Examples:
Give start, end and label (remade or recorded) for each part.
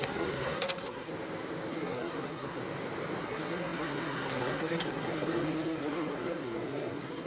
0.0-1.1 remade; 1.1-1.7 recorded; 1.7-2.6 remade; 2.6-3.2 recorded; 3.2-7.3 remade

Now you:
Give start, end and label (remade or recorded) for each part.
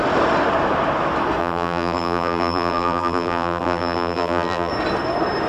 0.0-1.4 recorded; 1.4-4.7 remade; 4.7-5.5 recorded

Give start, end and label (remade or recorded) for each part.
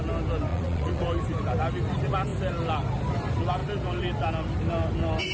0.0-0.5 recorded; 0.5-1.0 remade; 1.0-5.3 recorded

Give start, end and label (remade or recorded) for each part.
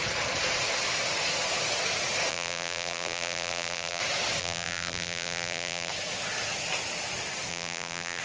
0.0-2.3 recorded; 2.3-4.0 remade; 4.0-4.4 recorded; 4.4-5.9 remade; 5.9-7.5 recorded; 7.5-8.2 remade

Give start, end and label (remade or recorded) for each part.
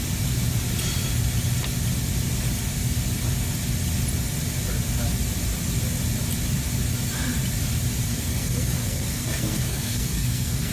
0.0-8.1 recorded; 8.1-10.7 remade